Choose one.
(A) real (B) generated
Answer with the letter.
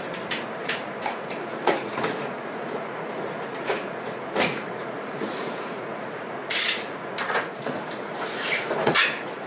B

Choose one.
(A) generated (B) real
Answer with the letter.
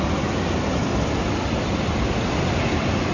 B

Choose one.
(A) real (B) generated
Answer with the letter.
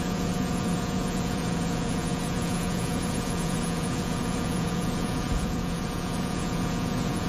B